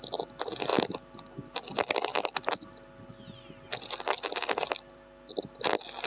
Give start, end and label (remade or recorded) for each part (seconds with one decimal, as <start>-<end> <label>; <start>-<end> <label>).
0.0-6.1 recorded